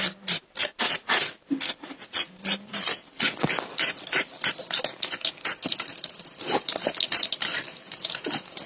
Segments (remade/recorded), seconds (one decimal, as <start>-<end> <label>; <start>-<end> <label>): 0.0-8.7 recorded